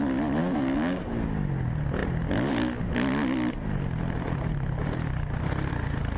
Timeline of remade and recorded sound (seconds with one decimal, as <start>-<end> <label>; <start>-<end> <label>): 0.0-0.4 recorded; 0.4-1.1 remade; 1.1-6.2 recorded